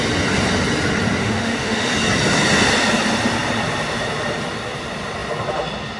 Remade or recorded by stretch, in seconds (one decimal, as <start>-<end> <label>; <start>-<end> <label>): 0.0-1.2 recorded; 1.2-1.9 remade; 1.9-6.0 recorded